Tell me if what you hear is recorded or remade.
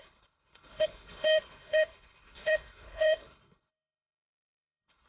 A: remade